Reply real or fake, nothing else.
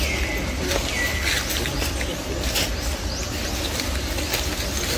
real